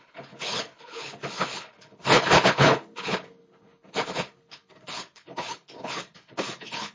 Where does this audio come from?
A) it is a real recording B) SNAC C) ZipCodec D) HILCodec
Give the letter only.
D